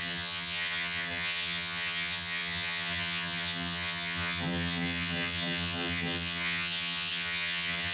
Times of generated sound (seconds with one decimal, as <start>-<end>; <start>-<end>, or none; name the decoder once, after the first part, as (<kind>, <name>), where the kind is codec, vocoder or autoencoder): 0.0-7.9 (vocoder, HiFi-GAN)